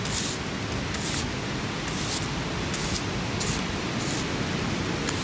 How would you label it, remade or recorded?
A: recorded